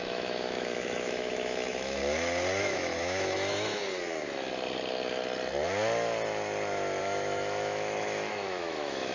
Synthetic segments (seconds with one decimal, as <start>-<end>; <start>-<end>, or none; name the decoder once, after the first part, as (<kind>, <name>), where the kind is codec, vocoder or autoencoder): 0.0-2.0 (autoencoder, DAC-VAE); 2.6-3.8; 7.0-9.1